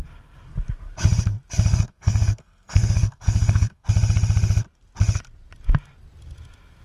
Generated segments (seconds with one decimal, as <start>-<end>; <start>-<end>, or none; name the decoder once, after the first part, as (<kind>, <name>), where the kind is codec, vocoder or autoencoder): 1.7-3.9 (codec, SNAC)

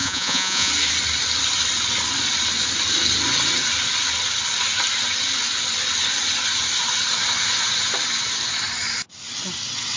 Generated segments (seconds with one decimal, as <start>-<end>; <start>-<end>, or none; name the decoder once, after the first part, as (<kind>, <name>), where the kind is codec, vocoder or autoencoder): 0.0-0.7 (vocoder, Vocos)

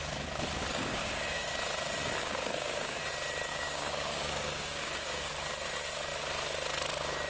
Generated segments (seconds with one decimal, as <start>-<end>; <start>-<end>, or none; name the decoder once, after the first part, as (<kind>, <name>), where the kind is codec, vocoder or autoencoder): 0.7-1.5 (codec, DAC); 2.2-3.0; 3.5-5.3

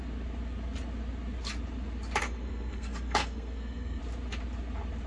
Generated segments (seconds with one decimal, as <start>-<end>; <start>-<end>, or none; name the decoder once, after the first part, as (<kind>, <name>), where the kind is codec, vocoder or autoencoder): 2.2-4.0 (codec, SNAC)

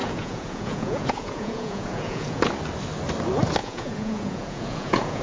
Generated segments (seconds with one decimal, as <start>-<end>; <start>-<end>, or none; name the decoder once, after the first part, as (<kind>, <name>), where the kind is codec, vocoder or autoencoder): 0.0-2.4 (vocoder, Vocos); 3.6-5.2

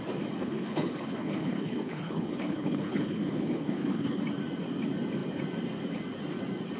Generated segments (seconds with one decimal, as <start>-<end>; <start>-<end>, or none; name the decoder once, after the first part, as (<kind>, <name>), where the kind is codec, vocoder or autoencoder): 0.4-4.2 (codec, HILCodec)